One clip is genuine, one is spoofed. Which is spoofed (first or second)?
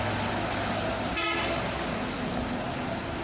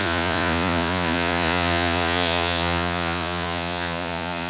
second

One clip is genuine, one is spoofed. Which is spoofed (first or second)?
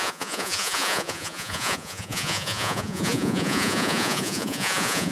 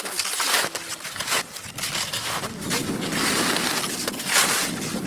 first